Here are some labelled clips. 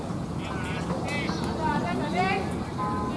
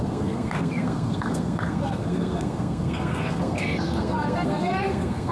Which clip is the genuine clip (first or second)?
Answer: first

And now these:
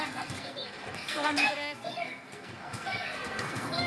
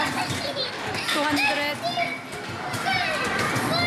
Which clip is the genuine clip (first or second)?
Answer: second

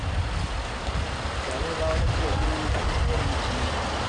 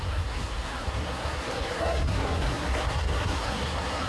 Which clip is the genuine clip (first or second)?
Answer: first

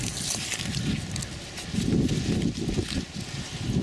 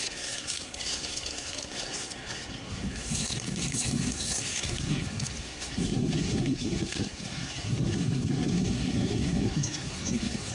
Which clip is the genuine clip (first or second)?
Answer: first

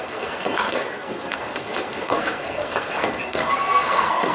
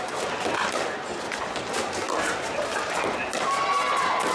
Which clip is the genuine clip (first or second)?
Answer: second